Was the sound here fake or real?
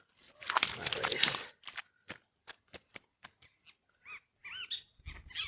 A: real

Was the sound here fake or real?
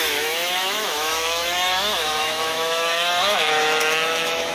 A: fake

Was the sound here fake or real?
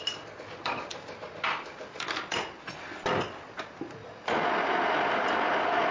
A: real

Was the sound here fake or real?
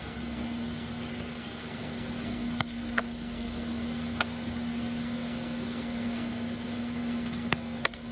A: fake